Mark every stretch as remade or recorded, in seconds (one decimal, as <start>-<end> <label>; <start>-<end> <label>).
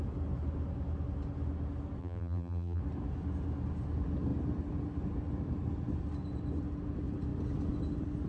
0.0-2.0 recorded; 2.0-2.8 remade; 2.8-8.3 recorded